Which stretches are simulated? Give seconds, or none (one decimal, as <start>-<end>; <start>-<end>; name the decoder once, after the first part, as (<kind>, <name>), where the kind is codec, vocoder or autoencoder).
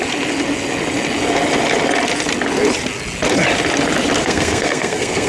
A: 4.2-5.3 (codec, SNAC)